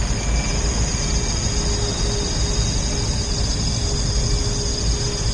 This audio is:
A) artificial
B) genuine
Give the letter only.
B